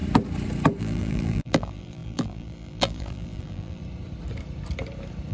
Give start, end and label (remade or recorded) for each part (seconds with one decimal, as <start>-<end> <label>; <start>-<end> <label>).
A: 0.0-0.8 recorded; 0.8-3.8 remade; 3.8-5.3 recorded